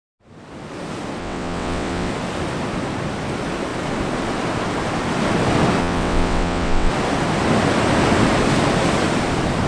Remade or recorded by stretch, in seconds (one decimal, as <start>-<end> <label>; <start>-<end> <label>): 0.0-1.2 recorded; 1.2-2.1 remade; 2.1-5.8 recorded; 5.8-6.9 remade; 6.9-9.7 recorded